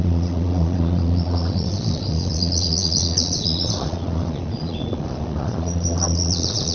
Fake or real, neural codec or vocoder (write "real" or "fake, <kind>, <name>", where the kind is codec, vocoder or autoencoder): fake, vocoder, Vocos